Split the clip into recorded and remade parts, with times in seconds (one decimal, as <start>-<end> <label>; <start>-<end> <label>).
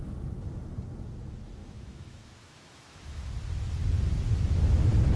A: 0.0-1.6 recorded; 1.6-3.3 remade; 3.3-5.2 recorded